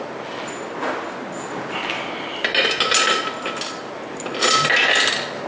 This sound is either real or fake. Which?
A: real